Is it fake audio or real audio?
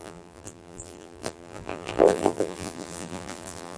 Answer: fake